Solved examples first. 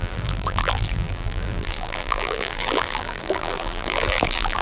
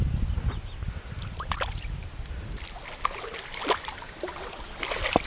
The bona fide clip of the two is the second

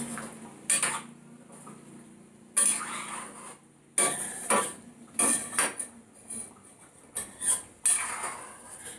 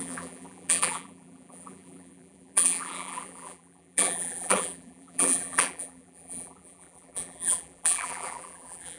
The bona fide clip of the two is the first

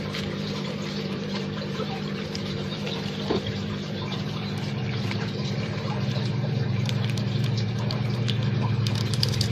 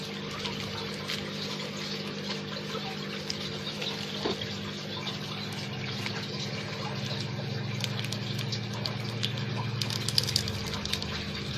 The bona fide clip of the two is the second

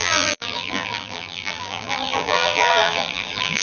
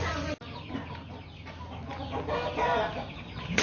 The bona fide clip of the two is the second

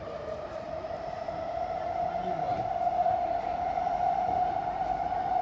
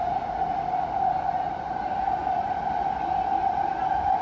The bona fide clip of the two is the second